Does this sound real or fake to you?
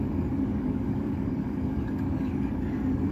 fake